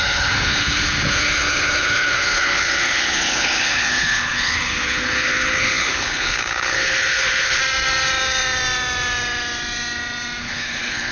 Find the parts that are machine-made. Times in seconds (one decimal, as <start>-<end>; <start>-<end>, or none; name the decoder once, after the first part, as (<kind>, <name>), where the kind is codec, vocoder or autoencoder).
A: 0.0-7.6 (codec, HILCodec); 10.4-11.1